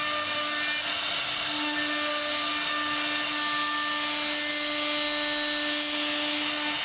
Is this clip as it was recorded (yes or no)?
yes